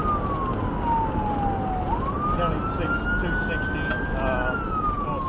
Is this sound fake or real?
real